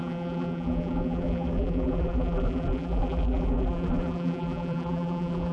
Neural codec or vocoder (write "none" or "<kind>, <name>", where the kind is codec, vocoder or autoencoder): vocoder, BigVGAN v2